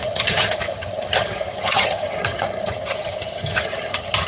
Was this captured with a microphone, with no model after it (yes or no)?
no